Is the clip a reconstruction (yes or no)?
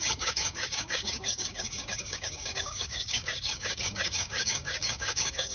yes